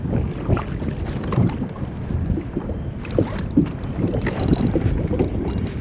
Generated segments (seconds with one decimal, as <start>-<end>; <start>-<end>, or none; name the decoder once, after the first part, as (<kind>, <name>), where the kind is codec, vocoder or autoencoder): 1.2-4.7 (vocoder, BigVGAN v2)